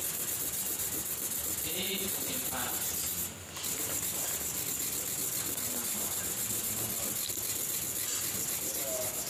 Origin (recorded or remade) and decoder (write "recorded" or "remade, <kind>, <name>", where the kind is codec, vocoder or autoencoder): recorded